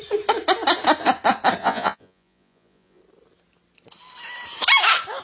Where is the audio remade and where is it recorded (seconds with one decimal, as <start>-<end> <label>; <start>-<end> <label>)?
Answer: 0.0-1.6 recorded; 1.6-3.0 remade; 3.0-5.2 recorded

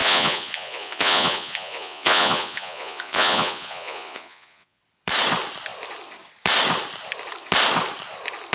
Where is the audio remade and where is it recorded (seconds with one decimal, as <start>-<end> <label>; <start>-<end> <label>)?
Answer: 0.0-4.8 remade; 4.8-8.5 recorded